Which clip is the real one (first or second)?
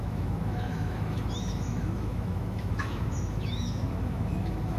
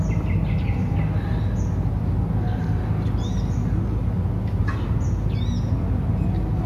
second